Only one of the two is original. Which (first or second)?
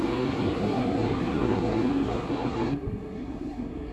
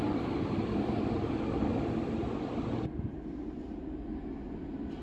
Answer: second